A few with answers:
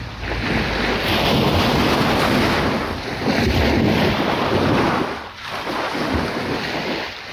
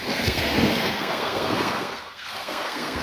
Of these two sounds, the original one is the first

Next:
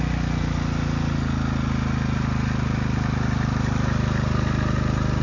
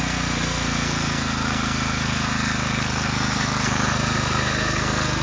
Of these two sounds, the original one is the first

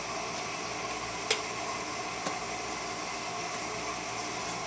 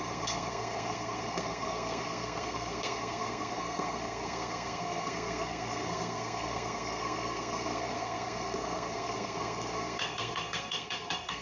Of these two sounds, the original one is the first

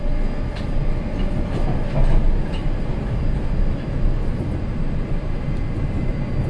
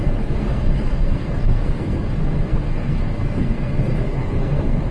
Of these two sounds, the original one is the first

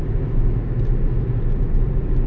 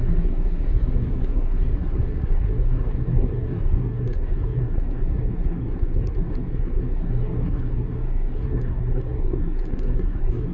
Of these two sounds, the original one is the first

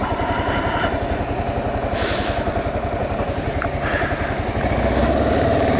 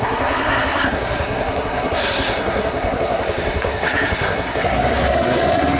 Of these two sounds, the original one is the first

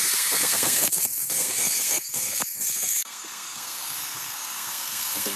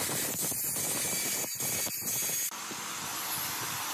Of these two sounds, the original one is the second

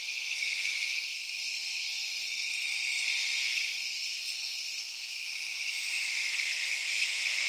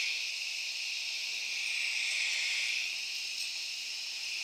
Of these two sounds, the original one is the second